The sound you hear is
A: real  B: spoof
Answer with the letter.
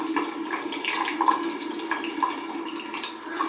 A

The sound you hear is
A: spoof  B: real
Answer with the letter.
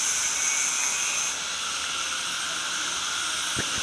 B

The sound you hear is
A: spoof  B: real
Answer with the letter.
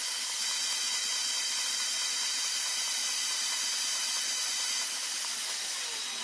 B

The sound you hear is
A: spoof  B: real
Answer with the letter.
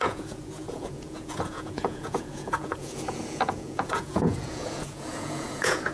A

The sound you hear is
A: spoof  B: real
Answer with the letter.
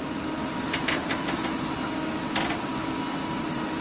B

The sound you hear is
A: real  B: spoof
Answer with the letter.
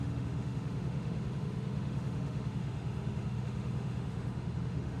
B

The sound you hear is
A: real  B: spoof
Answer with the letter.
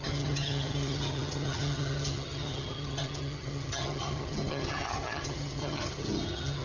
B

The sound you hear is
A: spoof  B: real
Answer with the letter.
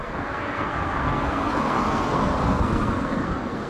A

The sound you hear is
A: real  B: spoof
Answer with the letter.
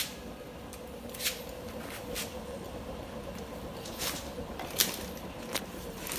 A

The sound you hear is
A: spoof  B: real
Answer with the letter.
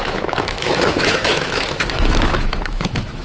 A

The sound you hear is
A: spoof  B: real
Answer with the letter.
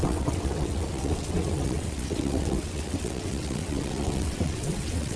A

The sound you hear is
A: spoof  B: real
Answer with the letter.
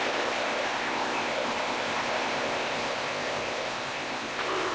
A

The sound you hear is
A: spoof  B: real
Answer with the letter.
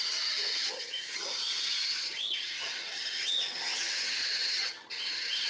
A